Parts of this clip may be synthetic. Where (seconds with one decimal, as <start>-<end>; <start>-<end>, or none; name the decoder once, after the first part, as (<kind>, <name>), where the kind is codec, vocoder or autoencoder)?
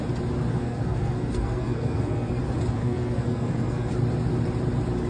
0.5-2.4 (codec, SNAC); 2.8-3.9